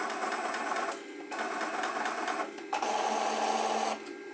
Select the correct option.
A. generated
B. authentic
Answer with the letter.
B